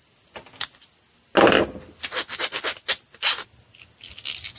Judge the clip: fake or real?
real